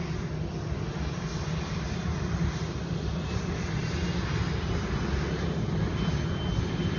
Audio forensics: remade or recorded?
recorded